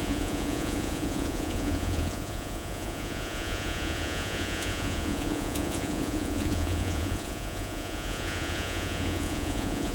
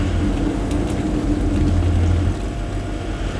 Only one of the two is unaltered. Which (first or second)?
second